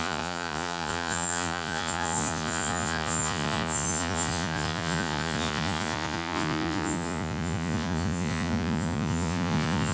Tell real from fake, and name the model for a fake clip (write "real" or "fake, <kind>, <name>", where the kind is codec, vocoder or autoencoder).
fake, vocoder, Vocos